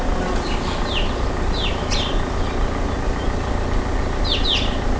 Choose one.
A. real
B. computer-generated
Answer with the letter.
A